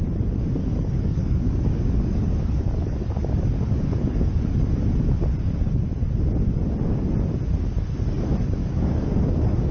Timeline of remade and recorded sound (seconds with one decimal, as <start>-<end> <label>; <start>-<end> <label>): 0.0-0.6 recorded; 0.6-4.7 remade; 4.7-8.6 recorded; 8.6-9.7 remade